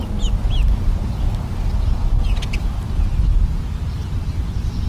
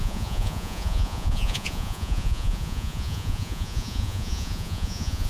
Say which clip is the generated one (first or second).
second